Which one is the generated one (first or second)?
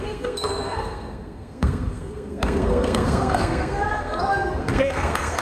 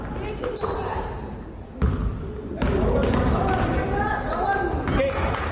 first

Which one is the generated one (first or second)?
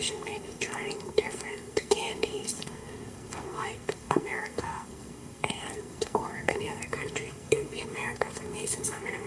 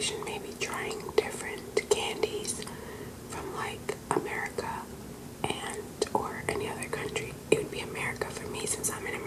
first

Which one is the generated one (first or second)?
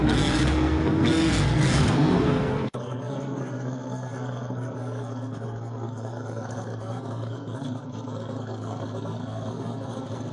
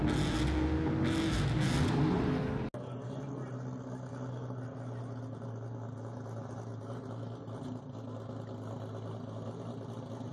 first